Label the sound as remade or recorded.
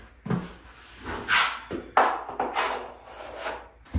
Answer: recorded